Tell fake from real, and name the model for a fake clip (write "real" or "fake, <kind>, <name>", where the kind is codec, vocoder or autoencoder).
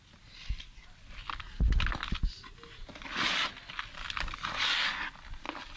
real